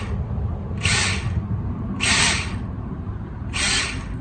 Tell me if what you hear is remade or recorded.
recorded